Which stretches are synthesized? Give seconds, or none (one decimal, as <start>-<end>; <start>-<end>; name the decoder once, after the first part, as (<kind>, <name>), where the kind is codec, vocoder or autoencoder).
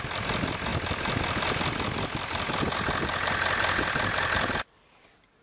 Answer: none